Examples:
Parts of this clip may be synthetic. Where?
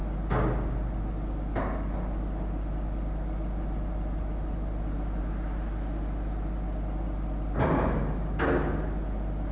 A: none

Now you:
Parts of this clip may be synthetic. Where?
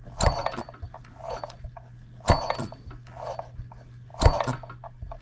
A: none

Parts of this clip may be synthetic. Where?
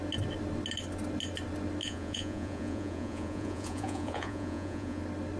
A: 1.8-5.0 (vocoder, Vocos)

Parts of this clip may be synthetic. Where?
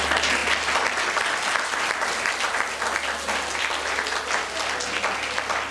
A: none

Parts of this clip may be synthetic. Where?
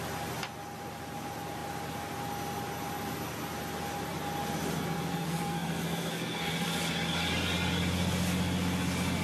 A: 5.1-6.5 (codec, SNAC)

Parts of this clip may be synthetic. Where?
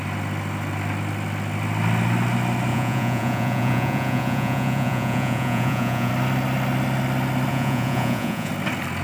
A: 2.7-6.1 (vocoder, Vocos); 7.5-8.5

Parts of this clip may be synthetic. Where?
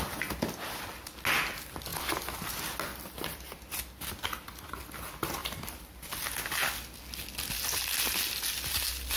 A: 1.9-2.5 (vocoder, BigVGAN v2); 2.9-3.8; 5.4-6.1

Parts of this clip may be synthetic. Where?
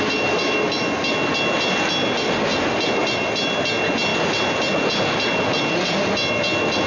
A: none